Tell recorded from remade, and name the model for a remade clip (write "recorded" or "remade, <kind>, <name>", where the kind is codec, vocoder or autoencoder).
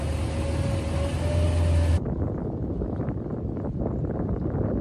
recorded